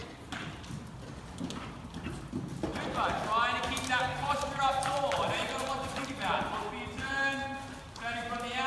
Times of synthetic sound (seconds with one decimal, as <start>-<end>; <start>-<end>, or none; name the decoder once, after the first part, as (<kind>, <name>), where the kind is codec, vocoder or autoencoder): 0.0-0.7 (vocoder, BigVGAN v2); 4.1-5.3